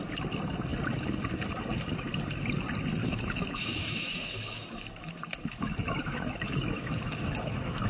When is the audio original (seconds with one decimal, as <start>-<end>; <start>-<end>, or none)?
0.0-3.0